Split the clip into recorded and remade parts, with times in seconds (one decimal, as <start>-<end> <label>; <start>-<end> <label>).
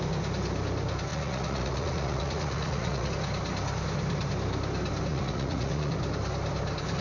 0.0-1.1 recorded; 1.1-3.1 remade; 3.1-5.1 recorded; 5.1-5.9 remade; 5.9-7.0 recorded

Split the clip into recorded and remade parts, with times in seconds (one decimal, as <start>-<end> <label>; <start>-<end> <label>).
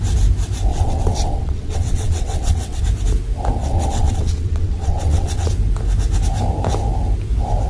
0.0-0.7 recorded; 0.7-2.8 remade; 2.8-3.6 recorded; 3.6-5.5 remade; 5.5-7.7 recorded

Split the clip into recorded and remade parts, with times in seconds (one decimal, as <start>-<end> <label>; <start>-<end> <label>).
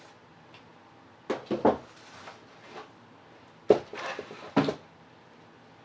0.0-0.7 remade; 0.7-3.8 recorded; 3.8-5.8 remade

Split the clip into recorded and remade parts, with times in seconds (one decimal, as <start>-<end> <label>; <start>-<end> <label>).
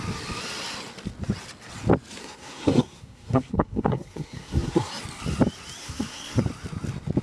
0.0-2.2 recorded; 2.2-4.9 remade; 4.9-5.8 recorded; 5.8-6.4 remade; 6.4-7.2 recorded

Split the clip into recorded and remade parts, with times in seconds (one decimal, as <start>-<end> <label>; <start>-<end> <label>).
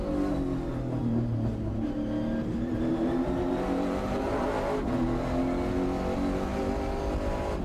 0.0-1.0 recorded; 1.0-1.5 remade; 1.5-2.9 recorded; 2.9-4.3 remade; 4.3-7.6 recorded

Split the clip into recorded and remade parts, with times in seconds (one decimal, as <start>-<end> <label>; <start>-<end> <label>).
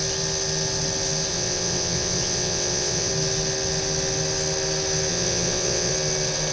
0.0-1.3 recorded; 1.3-3.1 remade; 3.1-5.1 recorded; 5.1-5.9 remade; 5.9-6.5 recorded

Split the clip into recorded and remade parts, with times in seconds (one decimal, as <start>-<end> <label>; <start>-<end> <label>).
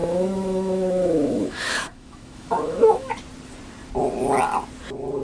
0.0-3.1 remade; 3.1-5.2 recorded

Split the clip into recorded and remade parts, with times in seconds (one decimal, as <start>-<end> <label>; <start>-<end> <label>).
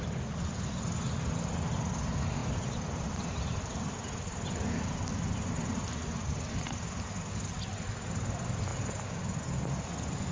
0.0-10.3 recorded